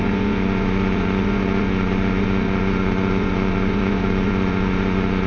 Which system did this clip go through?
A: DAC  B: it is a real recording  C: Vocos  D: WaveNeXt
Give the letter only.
C